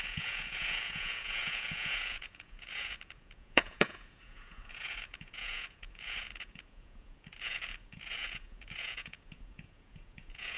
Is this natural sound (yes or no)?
no